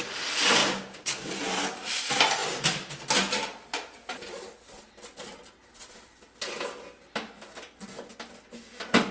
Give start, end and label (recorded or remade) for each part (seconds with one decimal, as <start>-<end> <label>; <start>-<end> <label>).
0.0-0.6 recorded; 0.6-1.3 remade; 1.3-9.1 recorded